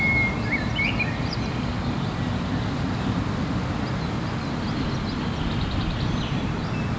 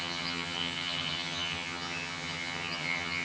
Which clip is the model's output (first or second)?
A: second